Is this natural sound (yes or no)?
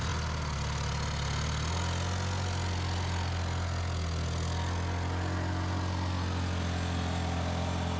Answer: yes